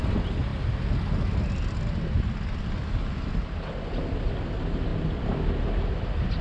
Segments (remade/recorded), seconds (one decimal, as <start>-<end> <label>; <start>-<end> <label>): 0.0-6.4 recorded